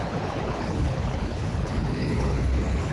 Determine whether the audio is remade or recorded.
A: remade